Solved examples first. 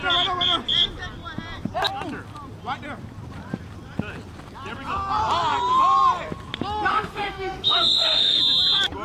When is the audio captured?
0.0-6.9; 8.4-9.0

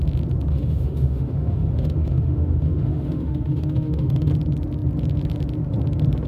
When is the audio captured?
0.0-0.5; 4.3-6.3

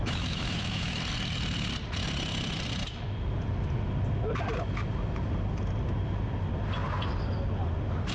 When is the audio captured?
1.0-8.1

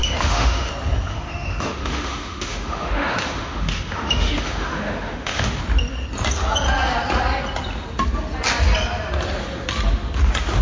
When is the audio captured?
0.7-1.1; 5.6-10.6

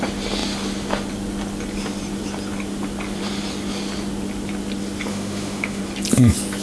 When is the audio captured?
0.0-5.1; 5.8-6.6

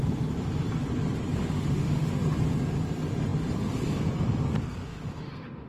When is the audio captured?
0.0-1.4; 2.2-4.8

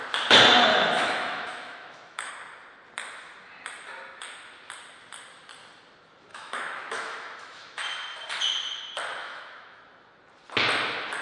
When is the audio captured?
0.0-0.7; 2.3-6.3; 7.8-9.2; 9.8-11.2

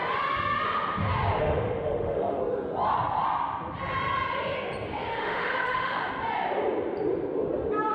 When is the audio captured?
0.0-1.4; 2.4-5.1; 6.1-7.9